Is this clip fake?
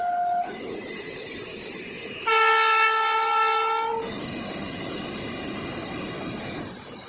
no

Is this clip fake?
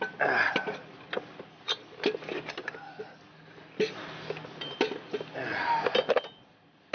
no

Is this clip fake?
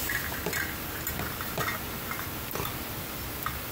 no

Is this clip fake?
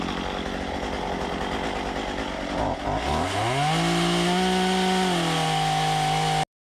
no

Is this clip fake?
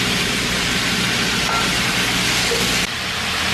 yes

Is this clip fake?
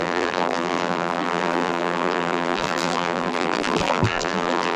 yes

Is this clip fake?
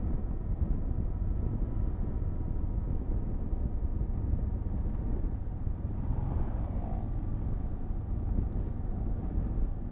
no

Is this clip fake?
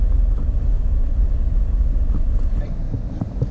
no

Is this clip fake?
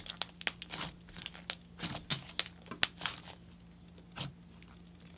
no